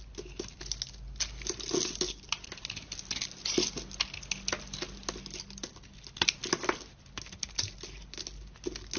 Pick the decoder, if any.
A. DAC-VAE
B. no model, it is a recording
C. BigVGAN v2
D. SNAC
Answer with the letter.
B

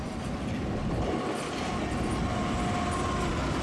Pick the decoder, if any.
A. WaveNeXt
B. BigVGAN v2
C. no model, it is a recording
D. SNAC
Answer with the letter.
C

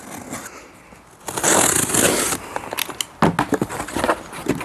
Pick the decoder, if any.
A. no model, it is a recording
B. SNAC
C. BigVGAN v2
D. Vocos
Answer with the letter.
A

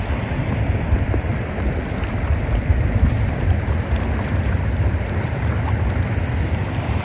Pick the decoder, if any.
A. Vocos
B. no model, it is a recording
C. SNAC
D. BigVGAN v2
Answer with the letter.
B